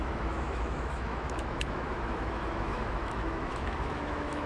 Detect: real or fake fake